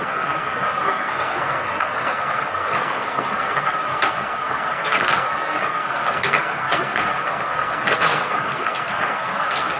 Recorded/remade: remade